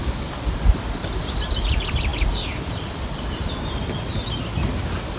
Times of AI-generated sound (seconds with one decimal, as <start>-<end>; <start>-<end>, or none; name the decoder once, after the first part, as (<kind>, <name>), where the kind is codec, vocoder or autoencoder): 0.0-0.5 (codec, DAC)